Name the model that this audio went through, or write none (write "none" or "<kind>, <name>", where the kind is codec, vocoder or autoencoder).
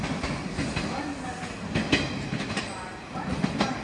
none